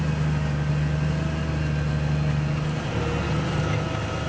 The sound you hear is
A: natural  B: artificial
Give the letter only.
A